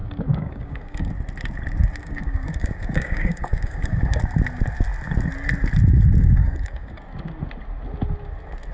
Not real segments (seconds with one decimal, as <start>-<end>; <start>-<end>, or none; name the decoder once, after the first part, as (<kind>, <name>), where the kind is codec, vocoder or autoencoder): 0.0-1.1 (codec, DAC); 2.0-4.2; 6.4-7.0